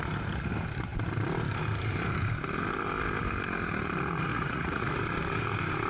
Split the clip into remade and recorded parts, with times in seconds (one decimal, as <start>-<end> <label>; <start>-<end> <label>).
0.0-4.3 recorded; 4.3-4.9 remade; 4.9-5.9 recorded

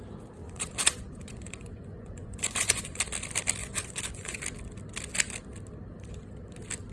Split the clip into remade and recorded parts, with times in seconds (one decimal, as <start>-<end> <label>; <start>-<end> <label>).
0.0-0.4 recorded; 0.4-3.0 remade; 3.0-3.6 recorded; 3.6-4.4 remade; 4.4-6.9 recorded